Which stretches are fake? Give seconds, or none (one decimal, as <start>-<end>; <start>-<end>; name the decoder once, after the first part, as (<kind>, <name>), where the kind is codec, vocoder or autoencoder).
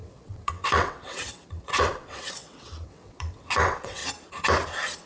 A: 0.0-4.0 (vocoder, WaveNeXt)